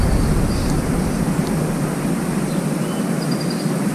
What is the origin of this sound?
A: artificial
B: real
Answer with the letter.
B